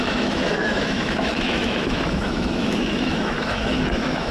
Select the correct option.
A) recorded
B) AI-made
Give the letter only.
B